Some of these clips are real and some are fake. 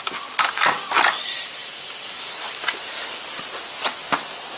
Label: real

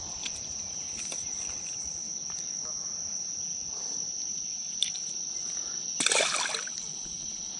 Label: real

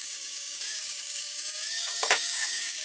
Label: fake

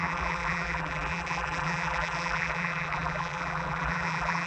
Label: fake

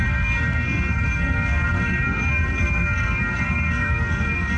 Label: fake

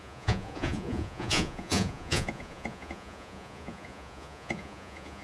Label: fake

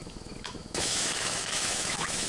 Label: fake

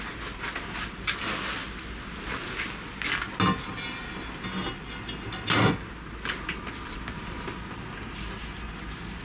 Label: real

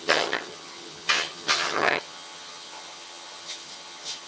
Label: fake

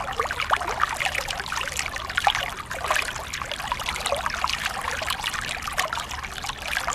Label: real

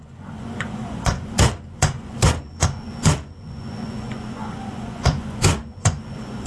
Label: fake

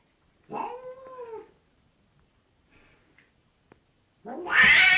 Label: real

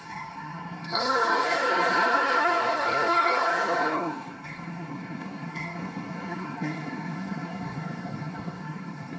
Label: fake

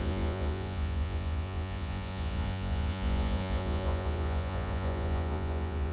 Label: fake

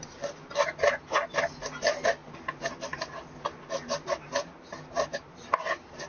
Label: real